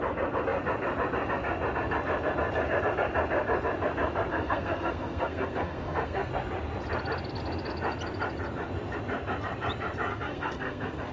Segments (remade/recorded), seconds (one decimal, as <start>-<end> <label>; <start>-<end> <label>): 0.0-4.3 recorded; 4.3-6.3 remade; 6.3-10.1 recorded; 10.1-11.1 remade